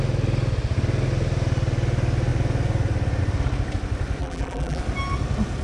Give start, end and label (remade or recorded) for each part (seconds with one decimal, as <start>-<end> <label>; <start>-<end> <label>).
0.0-4.2 recorded; 4.2-4.8 remade; 4.8-5.6 recorded